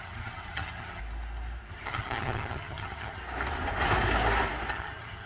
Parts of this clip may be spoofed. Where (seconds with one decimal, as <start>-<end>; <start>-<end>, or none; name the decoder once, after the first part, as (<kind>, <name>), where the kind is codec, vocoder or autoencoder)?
0.0-1.0 (vocoder, HiFi-GAN); 1.7-3.2; 4.7-5.3